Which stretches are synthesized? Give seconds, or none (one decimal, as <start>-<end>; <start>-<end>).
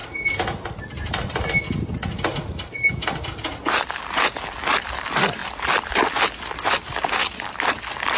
none